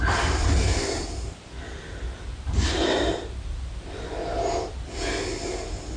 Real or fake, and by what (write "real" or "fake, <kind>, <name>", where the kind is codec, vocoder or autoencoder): real